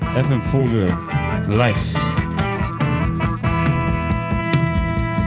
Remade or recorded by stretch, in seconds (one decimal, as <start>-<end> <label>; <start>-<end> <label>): 0.0-0.6 recorded; 0.6-2.7 remade; 2.7-4.4 recorded; 4.4-5.3 remade